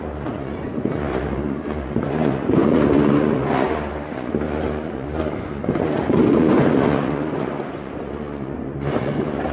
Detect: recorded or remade remade